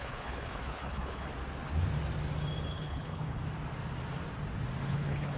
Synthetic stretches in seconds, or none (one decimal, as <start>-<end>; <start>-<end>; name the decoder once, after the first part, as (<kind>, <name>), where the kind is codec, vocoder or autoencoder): 0.0-1.3 (codec, HILCodec); 2.7-3.4; 4.9-5.4